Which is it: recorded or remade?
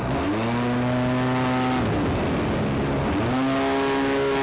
recorded